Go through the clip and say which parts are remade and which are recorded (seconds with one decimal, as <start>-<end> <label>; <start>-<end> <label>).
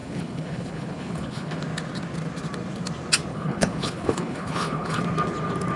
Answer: 0.0-1.6 remade; 1.6-3.3 recorded; 3.3-5.0 remade; 5.0-5.8 recorded